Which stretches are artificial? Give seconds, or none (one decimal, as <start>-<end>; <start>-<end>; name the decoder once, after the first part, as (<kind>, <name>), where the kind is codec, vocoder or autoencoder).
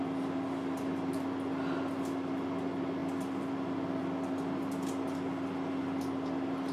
none